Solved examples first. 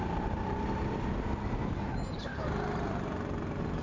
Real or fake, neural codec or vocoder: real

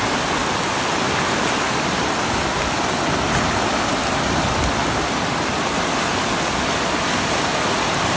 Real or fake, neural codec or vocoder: real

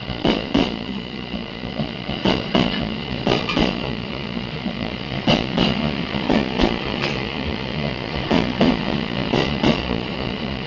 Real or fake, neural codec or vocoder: fake, vocoder, Vocos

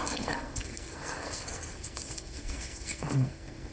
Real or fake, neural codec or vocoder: fake, codec, SNAC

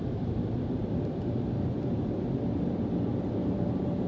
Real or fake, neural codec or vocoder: real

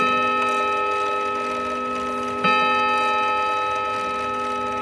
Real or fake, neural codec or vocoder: real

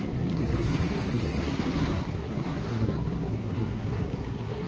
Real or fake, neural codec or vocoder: fake, codec, SNAC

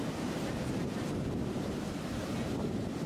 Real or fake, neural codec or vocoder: real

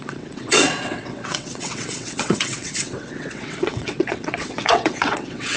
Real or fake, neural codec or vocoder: fake, vocoder, WaveNeXt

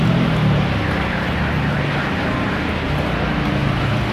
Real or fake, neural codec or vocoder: real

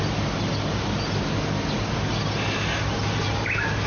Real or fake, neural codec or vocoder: real